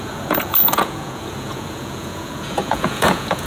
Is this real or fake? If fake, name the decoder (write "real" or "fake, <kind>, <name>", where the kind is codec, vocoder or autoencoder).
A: fake, vocoder, Vocos